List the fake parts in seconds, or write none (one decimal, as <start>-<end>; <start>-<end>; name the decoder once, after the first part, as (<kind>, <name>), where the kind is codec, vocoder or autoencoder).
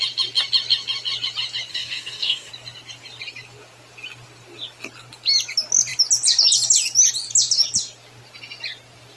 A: 1.7-2.5 (codec, DAC)